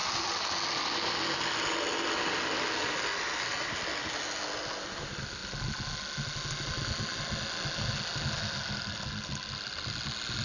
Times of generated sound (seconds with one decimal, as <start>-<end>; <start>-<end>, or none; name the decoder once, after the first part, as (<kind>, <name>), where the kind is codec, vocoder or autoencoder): none